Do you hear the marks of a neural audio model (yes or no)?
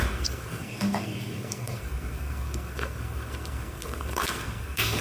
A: yes